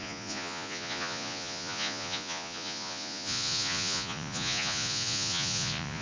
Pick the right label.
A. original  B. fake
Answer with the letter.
B